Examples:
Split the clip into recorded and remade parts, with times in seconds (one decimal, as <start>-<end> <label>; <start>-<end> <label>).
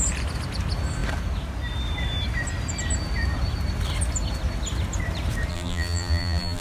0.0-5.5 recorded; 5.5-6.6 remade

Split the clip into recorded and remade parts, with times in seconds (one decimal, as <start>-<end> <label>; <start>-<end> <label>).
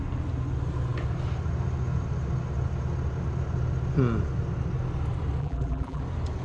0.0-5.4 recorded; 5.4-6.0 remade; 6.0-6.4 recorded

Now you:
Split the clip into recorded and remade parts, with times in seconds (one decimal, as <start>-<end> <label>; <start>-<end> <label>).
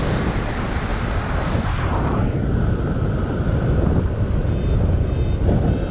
0.0-0.9 recorded; 0.9-1.7 remade; 1.7-5.9 recorded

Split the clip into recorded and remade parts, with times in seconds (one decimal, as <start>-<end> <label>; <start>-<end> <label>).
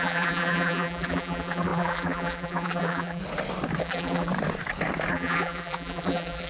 0.0-3.2 remade; 3.2-3.8 recorded; 3.8-4.3 remade; 4.3-5.1 recorded; 5.1-6.5 remade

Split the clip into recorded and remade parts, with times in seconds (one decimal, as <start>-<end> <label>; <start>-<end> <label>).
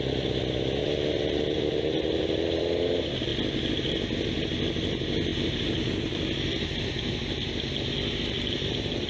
0.0-0.8 recorded; 0.8-2.6 remade; 2.6-5.3 recorded; 5.3-9.1 remade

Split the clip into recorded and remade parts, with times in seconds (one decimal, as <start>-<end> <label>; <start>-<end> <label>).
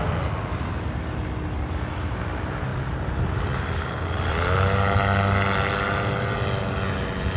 0.0-7.4 recorded